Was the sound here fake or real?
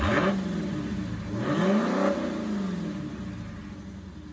real